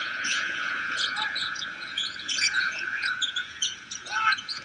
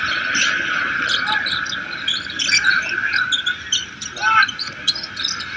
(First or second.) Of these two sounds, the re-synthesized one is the first